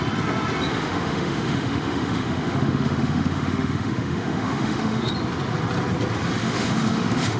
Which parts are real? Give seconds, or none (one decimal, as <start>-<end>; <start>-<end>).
0.0-0.7; 5.1-6.4